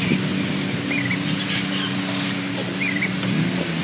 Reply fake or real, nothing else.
real